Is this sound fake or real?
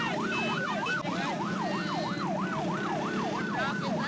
real